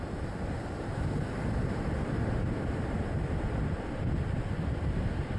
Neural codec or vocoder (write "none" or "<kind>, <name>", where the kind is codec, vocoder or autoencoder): none